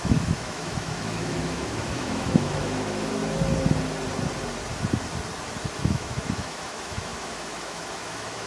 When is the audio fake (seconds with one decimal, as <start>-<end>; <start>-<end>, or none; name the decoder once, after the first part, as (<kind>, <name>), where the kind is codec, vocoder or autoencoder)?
0.0-3.2 (autoencoder, DAC-VAE); 5.8-8.5